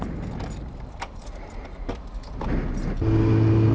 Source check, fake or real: real